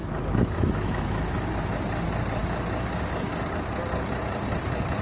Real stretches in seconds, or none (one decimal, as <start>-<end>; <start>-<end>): 1.6-5.0